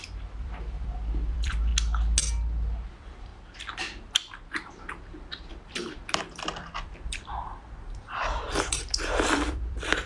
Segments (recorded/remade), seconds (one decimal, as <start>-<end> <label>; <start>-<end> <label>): 0.0-1.7 remade; 1.7-2.9 recorded; 2.9-3.3 remade; 3.3-5.5 recorded; 5.5-10.1 remade